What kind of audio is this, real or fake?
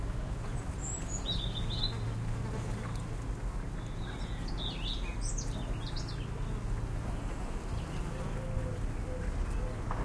real